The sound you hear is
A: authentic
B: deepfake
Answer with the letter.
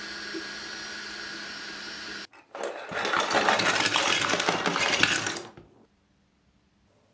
A